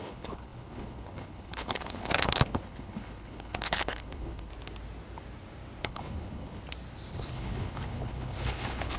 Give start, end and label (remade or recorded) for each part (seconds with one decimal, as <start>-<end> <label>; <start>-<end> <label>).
0.0-4.5 remade; 4.5-5.8 recorded; 5.8-6.6 remade; 6.6-7.1 recorded; 7.1-9.0 remade